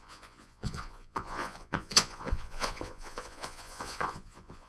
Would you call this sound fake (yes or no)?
yes